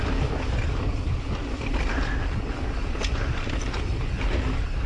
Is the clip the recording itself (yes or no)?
yes